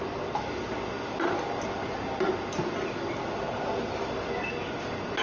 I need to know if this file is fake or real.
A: real